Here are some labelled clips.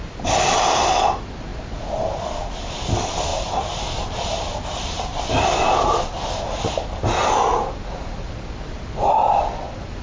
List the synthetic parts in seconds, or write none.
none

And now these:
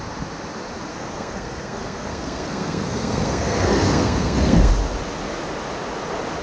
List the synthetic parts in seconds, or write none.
0.9-4.7 (codec, SNAC)

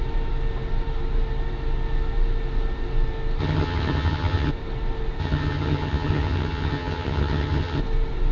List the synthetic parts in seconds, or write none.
3.4-4.5 (vocoder, HiFi-GAN); 5.2-7.8

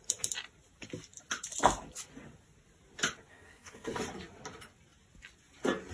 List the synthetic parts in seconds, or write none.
3.3-4.0 (codec, SNAC)

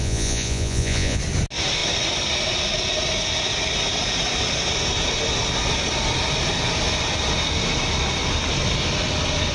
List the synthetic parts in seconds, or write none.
0.0-1.2 (vocoder, Vocos)

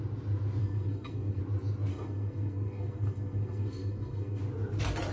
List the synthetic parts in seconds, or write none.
0.6-1.4 (codec, SNAC); 1.9-4.4

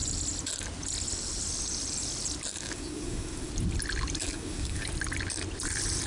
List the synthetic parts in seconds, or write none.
2.5-3.5 (codec, DAC); 4.2-4.9